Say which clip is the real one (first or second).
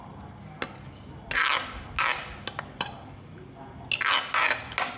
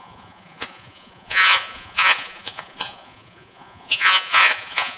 first